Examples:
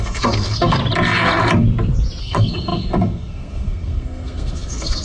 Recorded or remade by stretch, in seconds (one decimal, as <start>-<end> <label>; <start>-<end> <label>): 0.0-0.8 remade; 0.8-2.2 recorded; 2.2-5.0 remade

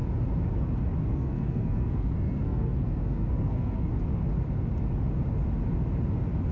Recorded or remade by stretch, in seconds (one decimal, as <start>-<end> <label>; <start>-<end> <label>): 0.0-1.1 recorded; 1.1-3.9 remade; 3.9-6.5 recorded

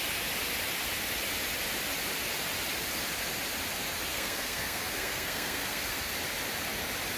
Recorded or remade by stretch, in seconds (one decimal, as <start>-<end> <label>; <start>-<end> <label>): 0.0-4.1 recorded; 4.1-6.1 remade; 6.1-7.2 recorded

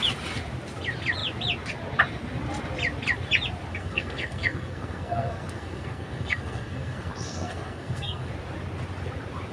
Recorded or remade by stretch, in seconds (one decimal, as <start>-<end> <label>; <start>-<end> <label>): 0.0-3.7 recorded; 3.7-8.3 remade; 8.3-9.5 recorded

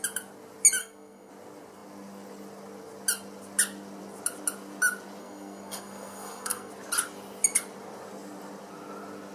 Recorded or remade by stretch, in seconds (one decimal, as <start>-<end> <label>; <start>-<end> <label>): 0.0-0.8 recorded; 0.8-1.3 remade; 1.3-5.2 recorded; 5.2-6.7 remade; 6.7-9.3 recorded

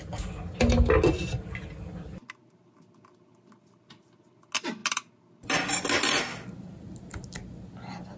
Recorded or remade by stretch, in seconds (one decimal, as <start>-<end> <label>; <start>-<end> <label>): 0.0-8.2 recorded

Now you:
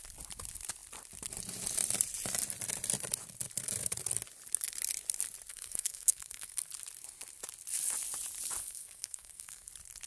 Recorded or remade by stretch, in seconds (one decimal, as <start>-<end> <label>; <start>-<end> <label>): 0.0-5.5 recorded; 5.5-6.7 remade; 6.7-8.6 recorded; 8.6-9.7 remade; 9.7-10.1 recorded

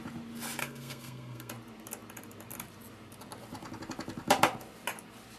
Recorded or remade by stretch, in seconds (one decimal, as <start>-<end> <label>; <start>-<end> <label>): 0.0-0.6 recorded; 0.6-1.5 remade; 1.5-5.4 recorded